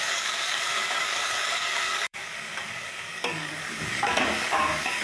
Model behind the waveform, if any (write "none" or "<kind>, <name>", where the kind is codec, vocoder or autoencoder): codec, DAC